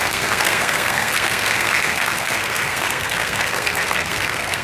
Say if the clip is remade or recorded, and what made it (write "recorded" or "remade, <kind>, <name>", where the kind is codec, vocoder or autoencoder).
remade, codec, SNAC